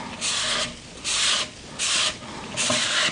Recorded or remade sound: recorded